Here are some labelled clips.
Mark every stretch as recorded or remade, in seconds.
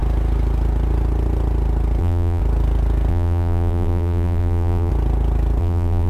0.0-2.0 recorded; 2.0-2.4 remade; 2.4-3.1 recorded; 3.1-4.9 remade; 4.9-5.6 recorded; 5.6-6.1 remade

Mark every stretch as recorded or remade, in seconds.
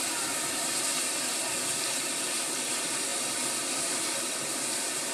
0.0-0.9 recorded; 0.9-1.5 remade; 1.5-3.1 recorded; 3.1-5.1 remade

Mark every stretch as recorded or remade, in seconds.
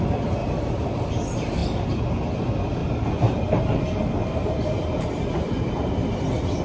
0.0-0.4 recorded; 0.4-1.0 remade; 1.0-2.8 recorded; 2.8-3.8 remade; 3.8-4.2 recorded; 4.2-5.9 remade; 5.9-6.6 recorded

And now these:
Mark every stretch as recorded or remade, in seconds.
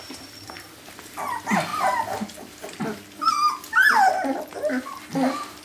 0.0-5.6 recorded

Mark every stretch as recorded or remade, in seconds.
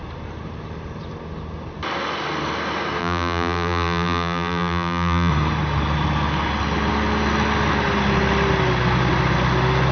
0.0-3.0 recorded; 3.0-5.3 remade; 5.3-9.9 recorded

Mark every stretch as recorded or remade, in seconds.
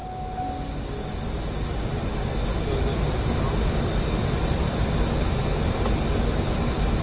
0.0-7.0 recorded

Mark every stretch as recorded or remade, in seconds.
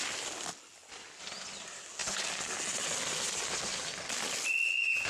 0.0-5.1 recorded